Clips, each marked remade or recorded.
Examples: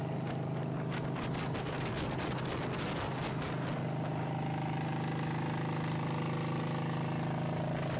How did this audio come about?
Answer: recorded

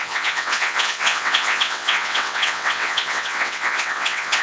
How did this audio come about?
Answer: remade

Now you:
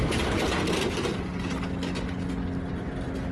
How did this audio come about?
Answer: recorded